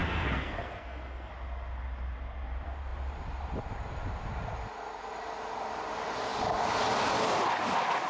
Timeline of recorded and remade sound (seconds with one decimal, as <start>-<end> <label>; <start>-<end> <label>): 0.0-1.3 remade; 1.3-8.1 recorded